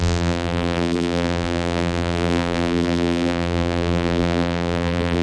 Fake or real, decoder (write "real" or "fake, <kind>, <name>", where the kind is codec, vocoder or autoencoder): fake, vocoder, BigVGAN v2